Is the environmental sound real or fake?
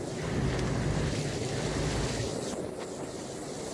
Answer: real